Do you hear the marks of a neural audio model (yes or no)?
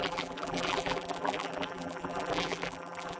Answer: yes